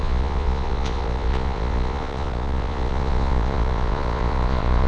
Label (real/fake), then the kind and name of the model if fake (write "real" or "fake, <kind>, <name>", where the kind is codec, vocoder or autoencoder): fake, vocoder, Vocos